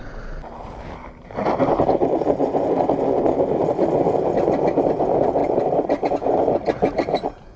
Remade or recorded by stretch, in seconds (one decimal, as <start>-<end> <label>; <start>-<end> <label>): 0.0-5.4 recorded; 5.4-6.1 remade; 6.1-7.6 recorded